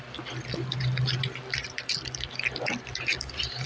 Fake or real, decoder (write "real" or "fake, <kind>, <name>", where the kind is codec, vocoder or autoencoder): fake, vocoder, BigVGAN v2